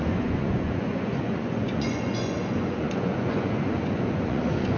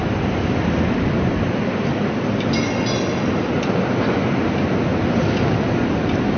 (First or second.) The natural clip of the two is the second